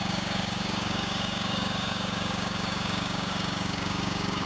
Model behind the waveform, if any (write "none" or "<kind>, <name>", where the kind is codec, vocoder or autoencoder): codec, DAC